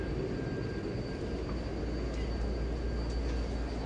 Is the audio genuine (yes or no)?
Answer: yes